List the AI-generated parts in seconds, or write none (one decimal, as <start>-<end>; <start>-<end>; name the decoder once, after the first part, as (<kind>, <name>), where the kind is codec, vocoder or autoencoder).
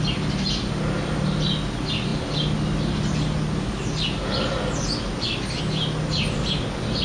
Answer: none